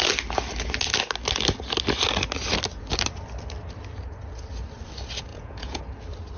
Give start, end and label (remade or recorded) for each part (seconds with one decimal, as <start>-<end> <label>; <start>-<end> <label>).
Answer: 0.0-5.3 recorded; 5.3-5.8 remade; 5.8-6.4 recorded